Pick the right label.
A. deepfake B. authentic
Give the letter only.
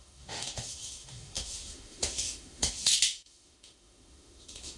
A